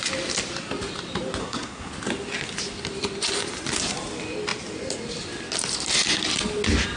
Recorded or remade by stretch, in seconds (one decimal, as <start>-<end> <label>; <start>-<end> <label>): 0.0-1.4 recorded; 1.4-1.9 remade; 1.9-7.0 recorded